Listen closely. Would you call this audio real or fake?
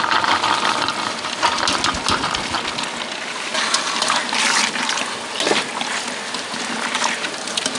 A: real